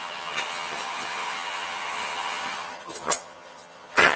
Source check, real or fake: fake